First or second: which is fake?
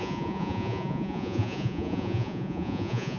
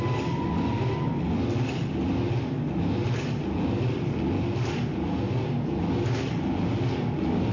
first